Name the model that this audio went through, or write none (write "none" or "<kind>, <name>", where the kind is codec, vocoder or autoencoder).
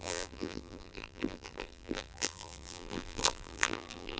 vocoder, BigVGAN v2